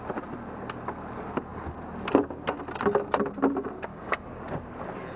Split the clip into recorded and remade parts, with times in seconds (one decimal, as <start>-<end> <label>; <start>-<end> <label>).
0.0-3.9 recorded; 3.9-4.4 remade; 4.4-5.2 recorded